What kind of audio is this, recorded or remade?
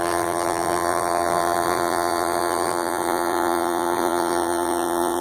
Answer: remade